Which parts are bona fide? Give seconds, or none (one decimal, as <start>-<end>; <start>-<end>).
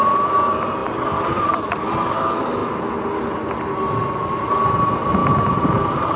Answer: 0.0-6.2